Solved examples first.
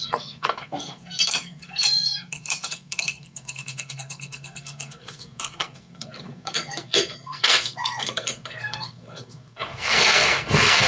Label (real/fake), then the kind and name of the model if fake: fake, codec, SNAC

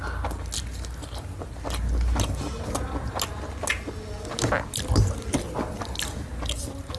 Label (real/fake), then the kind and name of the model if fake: real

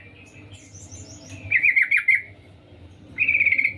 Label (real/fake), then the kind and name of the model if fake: real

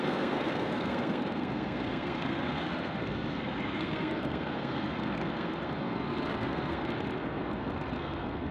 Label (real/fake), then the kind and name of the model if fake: fake, codec, SNAC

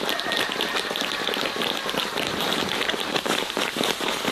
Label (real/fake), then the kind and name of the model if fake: real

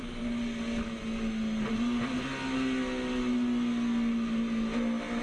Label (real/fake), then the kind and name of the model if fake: real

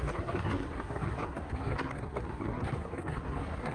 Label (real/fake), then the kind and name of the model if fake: fake, codec, SNAC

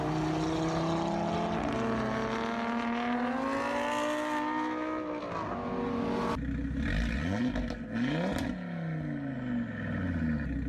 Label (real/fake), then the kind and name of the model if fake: real